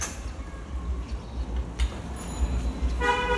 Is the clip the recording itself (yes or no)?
yes